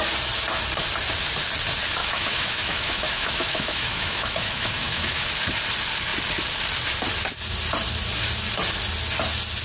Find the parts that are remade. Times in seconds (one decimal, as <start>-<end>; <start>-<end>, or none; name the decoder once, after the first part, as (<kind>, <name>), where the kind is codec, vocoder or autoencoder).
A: 2.0-5.3 (autoencoder, DAC-VAE)

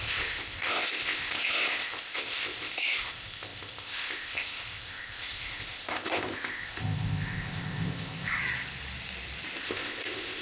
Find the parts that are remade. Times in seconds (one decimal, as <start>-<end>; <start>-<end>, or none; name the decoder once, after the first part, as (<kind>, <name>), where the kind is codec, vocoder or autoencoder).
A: 0.0-8.4 (codec, ZipCodec); 9.6-10.4